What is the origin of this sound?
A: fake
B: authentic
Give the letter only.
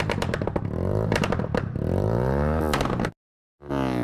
B